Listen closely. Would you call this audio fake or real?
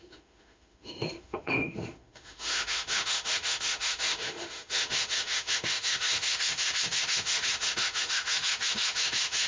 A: fake